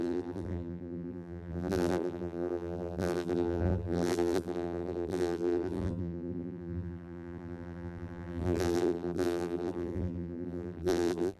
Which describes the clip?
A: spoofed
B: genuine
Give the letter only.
A